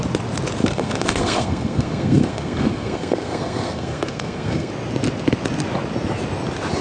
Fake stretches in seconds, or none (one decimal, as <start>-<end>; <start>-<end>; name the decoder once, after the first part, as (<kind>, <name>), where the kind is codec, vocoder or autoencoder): 0.6-4.7 (codec, SNAC)

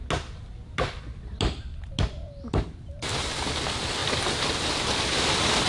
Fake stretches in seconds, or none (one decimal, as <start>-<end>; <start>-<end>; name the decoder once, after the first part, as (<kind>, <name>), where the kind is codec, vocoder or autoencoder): none

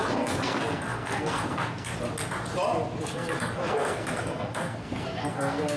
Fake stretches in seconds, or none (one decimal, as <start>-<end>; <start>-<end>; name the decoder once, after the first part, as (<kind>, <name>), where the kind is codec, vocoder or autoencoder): 0.0-1.9 (codec, SNAC); 3.0-5.8

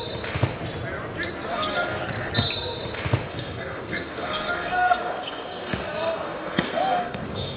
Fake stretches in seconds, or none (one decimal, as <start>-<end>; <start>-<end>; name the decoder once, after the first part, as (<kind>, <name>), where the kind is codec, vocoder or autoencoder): 1.5-2.3 (codec, SNAC); 3.3-7.6